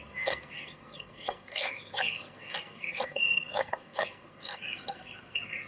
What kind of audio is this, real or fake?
fake